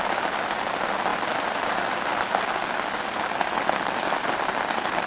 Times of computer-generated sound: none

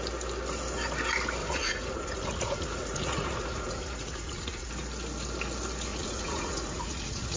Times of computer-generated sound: 1.4-4.7 (vocoder, Vocos); 5.9-7.4

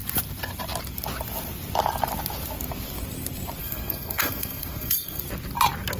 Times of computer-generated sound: 3.6-5.2 (codec, SNAC)

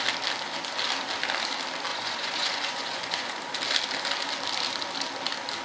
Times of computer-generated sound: 1.9-3.4 (vocoder, Vocos)

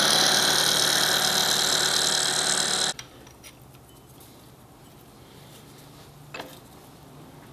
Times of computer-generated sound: none

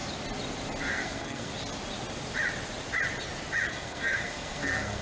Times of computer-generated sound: 0.9-1.5 (codec, SNAC); 3.7-5.0

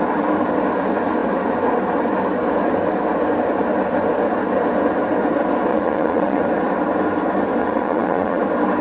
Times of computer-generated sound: 5.7-6.4 (vocoder, Vocos); 7.6-8.4

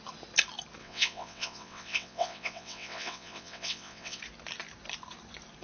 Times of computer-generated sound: 0.8-4.2 (vocoder, WaveNeXt)